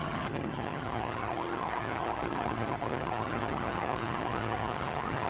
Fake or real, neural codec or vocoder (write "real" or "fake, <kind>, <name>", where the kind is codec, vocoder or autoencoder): fake, vocoder, HiFi-GAN